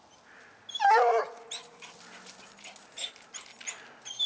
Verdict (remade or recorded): recorded